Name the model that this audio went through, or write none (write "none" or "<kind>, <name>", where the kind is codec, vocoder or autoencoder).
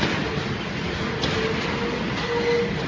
none